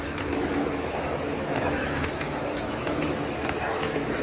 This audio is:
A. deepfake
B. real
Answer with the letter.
A